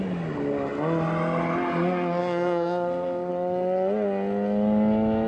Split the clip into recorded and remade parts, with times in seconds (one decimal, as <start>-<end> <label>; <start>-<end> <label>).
0.0-2.2 recorded; 2.2-3.3 remade; 3.3-5.3 recorded